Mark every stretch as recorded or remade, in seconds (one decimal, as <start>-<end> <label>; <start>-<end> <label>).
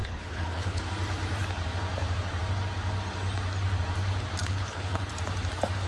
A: 0.0-0.8 remade; 0.8-4.4 recorded; 4.4-5.1 remade; 5.1-5.9 recorded